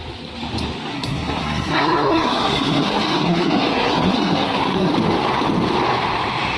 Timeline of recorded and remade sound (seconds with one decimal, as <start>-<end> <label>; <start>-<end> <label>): 0.0-0.9 recorded; 0.9-4.9 remade; 4.9-6.6 recorded